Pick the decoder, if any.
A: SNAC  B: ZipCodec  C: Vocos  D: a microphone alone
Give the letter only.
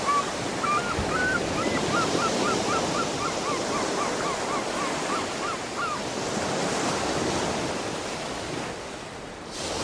D